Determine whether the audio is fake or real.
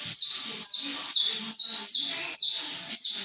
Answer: real